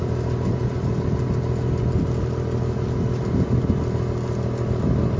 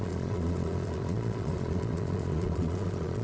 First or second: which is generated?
second